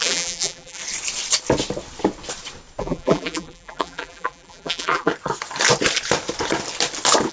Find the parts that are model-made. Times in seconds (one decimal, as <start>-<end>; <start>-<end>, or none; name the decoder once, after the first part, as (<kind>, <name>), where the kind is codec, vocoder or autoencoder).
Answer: 0.0-0.8 (vocoder, BigVGAN v2); 2.8-5.1